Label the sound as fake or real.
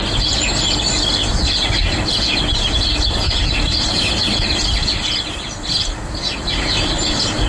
real